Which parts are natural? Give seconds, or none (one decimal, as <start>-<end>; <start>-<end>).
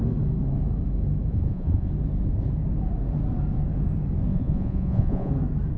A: 0.0-1.3; 1.9-4.3; 5.3-5.8